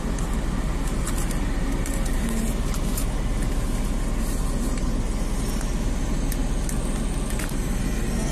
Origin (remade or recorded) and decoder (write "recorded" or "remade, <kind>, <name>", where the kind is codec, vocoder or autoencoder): recorded